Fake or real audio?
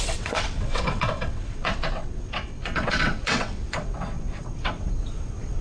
fake